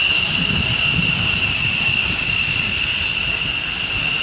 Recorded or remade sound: recorded